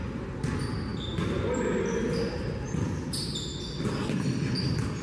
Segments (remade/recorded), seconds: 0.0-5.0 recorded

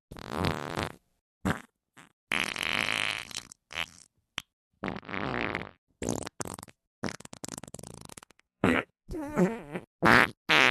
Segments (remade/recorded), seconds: 0.0-8.1 recorded; 8.1-9.4 remade; 9.4-10.7 recorded

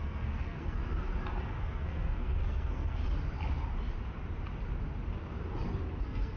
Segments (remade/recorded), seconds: 0.0-0.8 remade; 0.8-1.6 recorded; 1.6-3.0 remade; 3.0-6.0 recorded; 6.0-6.4 remade

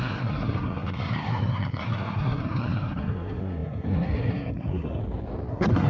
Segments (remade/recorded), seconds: 0.0-5.0 remade; 5.0-5.5 recorded; 5.5-5.9 remade

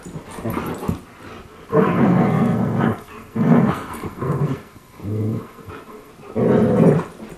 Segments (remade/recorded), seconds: 0.0-1.7 recorded; 1.7-6.1 remade; 6.1-7.4 recorded

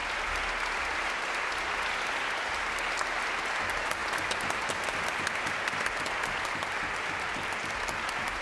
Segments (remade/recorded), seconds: 0.0-8.4 recorded

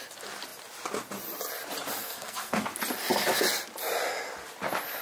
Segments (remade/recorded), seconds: 0.0-2.0 recorded; 2.0-2.6 remade; 2.6-5.0 recorded